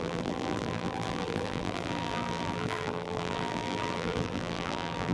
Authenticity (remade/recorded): remade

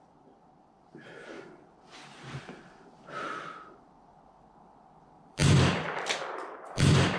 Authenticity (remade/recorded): remade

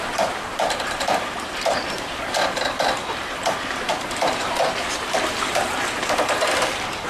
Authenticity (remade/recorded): remade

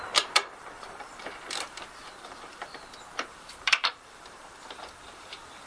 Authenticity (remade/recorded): remade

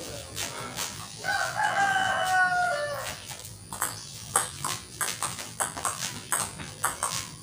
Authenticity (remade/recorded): remade